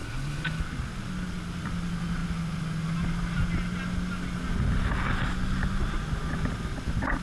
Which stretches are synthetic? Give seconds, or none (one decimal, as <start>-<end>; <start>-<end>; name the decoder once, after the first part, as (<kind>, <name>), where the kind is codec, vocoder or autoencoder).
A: 0.0-0.6 (codec, HILCodec)